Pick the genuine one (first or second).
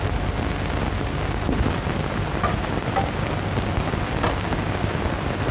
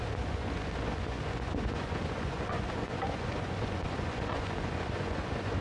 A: first